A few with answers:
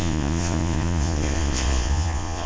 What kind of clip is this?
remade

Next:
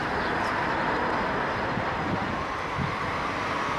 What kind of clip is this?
recorded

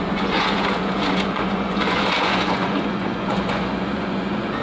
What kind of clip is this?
remade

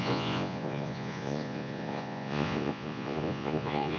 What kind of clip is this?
remade